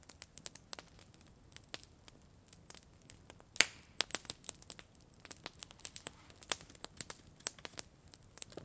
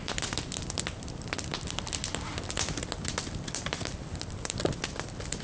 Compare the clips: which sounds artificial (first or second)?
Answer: second